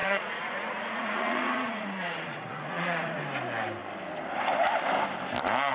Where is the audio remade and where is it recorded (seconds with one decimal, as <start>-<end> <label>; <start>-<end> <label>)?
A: 0.0-3.2 remade; 3.2-5.7 recorded